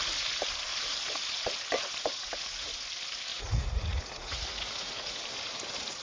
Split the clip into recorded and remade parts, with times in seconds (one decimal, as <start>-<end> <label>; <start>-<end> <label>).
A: 0.0-3.3 recorded; 3.3-5.2 remade; 5.2-6.0 recorded